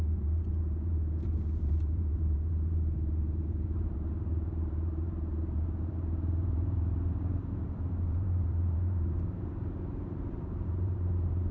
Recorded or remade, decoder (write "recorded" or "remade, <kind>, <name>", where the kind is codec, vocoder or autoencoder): remade, vocoder, BigVGAN v2